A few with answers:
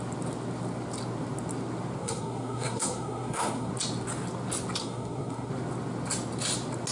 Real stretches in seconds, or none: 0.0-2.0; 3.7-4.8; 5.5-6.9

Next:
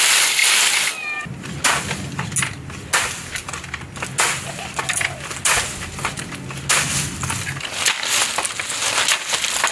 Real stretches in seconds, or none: 0.0-9.7

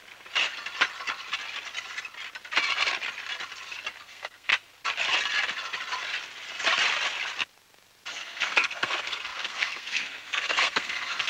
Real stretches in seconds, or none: 0.0-4.0; 4.5-8.1

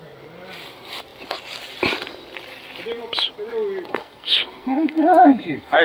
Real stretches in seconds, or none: 0.0-3.9